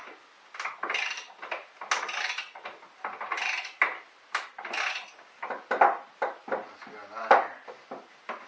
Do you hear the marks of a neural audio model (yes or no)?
no